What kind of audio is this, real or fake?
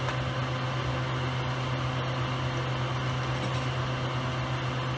real